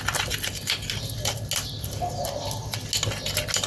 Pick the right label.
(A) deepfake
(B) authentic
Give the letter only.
B